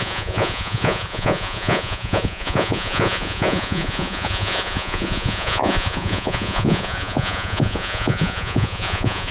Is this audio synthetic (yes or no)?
yes